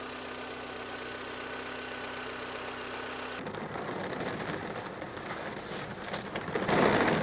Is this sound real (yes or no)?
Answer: yes